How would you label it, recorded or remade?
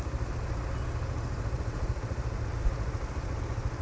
recorded